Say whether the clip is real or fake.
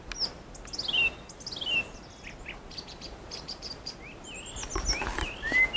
real